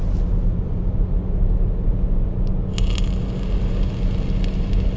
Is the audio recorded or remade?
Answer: recorded